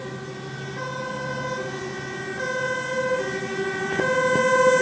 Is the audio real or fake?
real